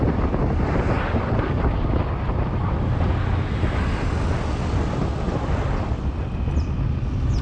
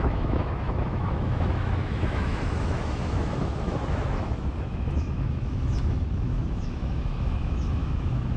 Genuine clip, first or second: first